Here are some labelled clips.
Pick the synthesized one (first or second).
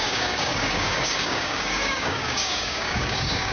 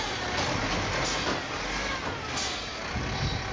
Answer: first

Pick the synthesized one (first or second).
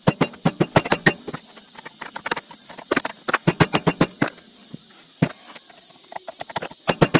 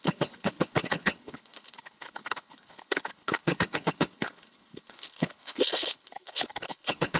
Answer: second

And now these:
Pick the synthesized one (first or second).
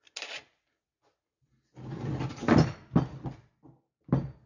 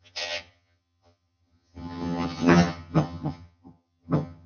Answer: second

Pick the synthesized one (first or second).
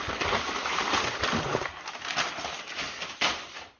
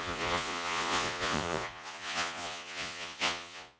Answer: second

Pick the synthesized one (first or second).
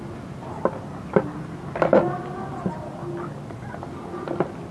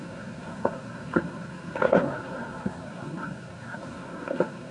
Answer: second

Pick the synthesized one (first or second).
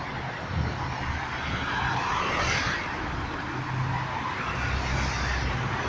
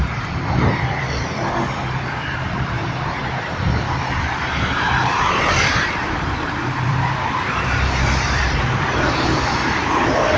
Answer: second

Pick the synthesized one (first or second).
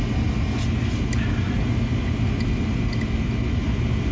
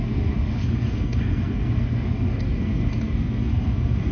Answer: second